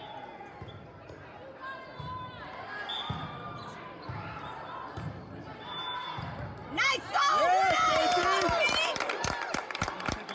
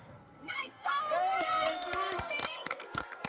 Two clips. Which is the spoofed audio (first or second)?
second